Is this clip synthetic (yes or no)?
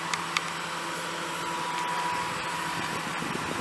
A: no